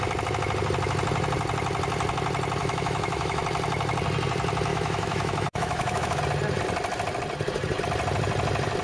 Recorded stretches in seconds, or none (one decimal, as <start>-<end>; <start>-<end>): 0.0-2.6; 3.4-4.7; 6.2-8.8

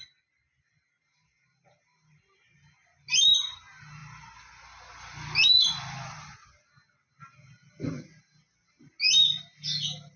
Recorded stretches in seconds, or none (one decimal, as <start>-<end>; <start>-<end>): 0.0-10.2

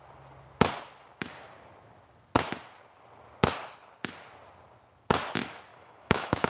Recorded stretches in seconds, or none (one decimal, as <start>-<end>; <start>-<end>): 0.0-5.7